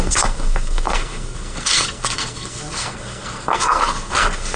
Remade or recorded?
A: remade